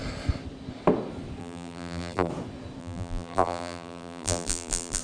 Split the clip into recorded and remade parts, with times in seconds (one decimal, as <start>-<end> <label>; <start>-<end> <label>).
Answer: 0.0-1.4 recorded; 1.4-2.3 remade; 2.3-2.8 recorded; 2.8-5.0 remade